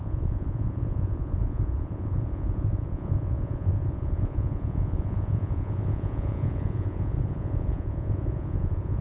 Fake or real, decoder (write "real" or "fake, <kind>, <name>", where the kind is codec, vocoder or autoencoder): fake, vocoder, Vocos